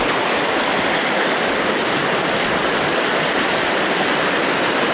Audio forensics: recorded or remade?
recorded